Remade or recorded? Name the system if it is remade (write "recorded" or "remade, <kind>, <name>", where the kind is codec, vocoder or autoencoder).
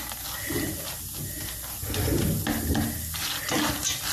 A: recorded